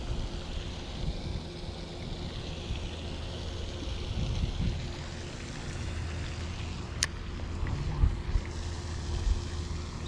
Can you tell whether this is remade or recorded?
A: recorded